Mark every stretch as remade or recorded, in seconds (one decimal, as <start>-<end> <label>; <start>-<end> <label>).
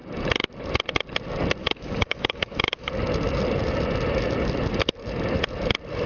0.0-1.6 recorded; 1.6-2.9 remade; 2.9-6.1 recorded